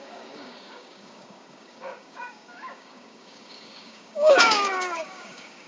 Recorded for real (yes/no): no